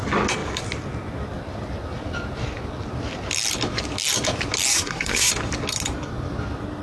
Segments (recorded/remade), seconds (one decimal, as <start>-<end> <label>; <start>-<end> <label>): 0.0-4.7 recorded; 4.7-5.3 remade; 5.3-6.8 recorded